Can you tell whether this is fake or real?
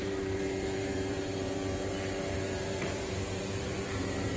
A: fake